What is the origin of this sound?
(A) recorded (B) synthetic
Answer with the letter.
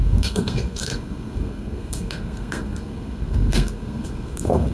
B